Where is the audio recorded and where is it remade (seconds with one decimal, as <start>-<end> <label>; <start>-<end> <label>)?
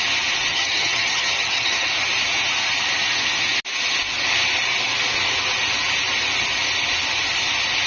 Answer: 0.0-0.5 recorded; 0.5-1.9 remade; 1.9-7.9 recorded